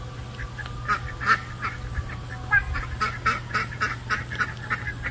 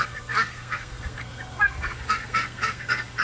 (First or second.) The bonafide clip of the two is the first